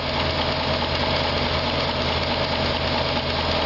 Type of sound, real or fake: real